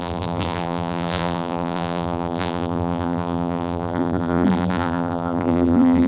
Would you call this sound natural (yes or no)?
no